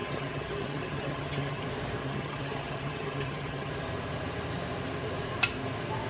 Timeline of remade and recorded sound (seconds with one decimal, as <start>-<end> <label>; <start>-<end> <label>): 0.0-1.6 remade; 1.6-2.0 recorded; 2.0-3.7 remade; 3.7-6.1 recorded